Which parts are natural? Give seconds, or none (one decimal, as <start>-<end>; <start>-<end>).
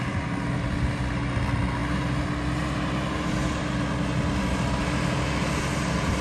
0.0-6.2